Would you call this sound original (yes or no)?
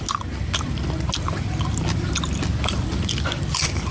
yes